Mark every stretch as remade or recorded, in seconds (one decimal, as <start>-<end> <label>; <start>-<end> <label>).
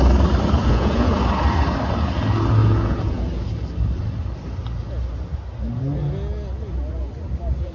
0.0-0.6 recorded; 0.6-1.2 remade; 1.2-2.6 recorded; 2.6-3.2 remade; 3.2-7.7 recorded